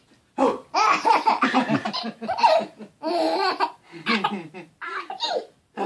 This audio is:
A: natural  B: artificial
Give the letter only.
A